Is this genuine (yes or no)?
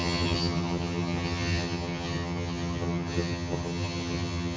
no